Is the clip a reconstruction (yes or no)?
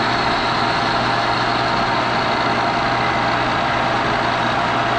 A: no